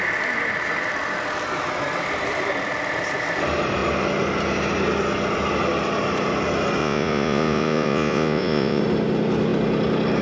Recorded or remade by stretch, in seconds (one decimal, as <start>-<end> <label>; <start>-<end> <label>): 0.0-6.8 recorded; 6.8-8.8 remade; 8.8-10.2 recorded